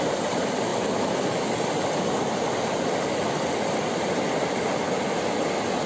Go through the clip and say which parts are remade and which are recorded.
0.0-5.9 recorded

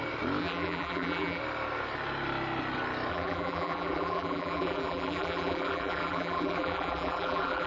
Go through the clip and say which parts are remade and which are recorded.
0.0-0.4 recorded; 0.4-1.4 remade; 1.4-3.1 recorded; 3.1-7.7 remade

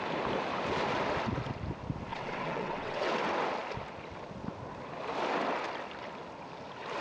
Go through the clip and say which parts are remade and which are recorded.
0.0-2.1 recorded; 2.1-3.1 remade; 3.1-7.0 recorded